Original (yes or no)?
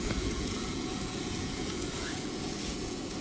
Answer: no